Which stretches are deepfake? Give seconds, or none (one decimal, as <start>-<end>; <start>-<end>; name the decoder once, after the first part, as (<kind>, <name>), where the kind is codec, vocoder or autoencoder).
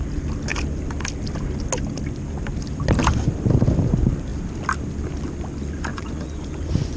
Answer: 5.9-7.0 (vocoder, Vocos)